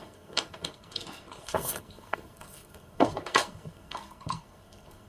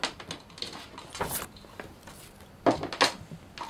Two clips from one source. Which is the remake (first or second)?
first